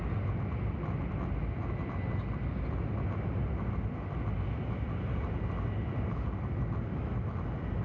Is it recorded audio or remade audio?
recorded